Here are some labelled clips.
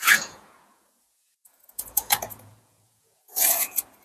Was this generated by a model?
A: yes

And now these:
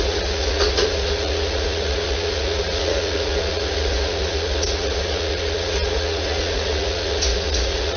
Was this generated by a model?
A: yes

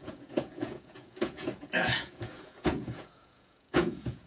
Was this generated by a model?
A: yes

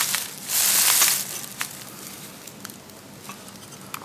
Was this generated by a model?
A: no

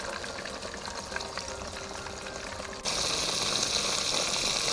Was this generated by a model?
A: no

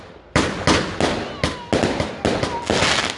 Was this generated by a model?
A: no